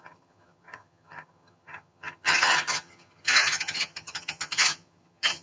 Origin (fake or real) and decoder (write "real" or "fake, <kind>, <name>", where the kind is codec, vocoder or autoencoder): fake, vocoder, HiFi-GAN